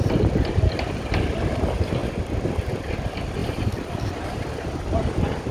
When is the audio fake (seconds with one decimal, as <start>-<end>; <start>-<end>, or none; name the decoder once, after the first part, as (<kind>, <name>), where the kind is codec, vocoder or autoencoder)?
none